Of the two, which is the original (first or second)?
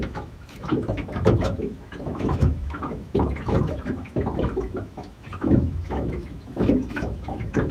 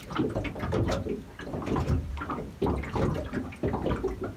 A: second